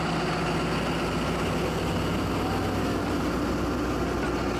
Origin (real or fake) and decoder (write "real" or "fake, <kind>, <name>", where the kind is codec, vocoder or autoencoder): real